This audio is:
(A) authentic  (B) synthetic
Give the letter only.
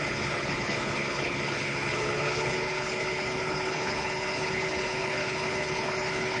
B